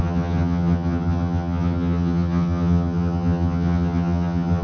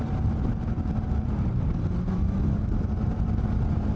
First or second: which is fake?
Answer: first